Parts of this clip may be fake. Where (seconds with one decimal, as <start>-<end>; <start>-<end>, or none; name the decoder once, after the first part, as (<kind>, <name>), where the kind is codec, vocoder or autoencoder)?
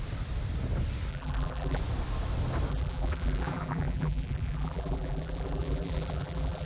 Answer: 1.1-1.8 (vocoder, BigVGAN v2); 2.7-6.7